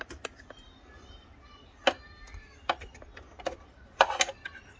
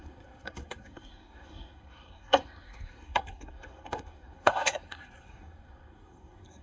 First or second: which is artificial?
second